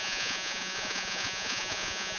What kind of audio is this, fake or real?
fake